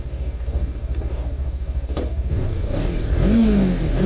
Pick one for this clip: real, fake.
fake